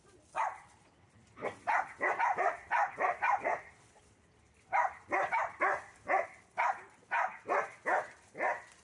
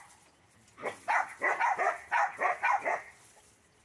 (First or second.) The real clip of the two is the second